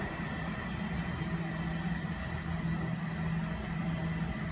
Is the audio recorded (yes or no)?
yes